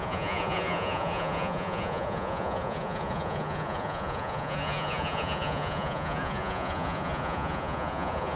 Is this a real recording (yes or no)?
no